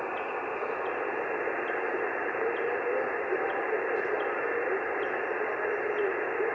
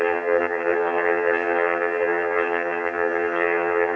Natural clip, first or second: first